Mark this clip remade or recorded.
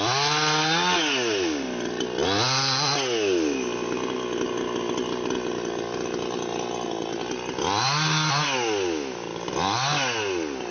recorded